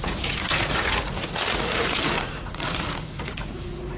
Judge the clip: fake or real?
fake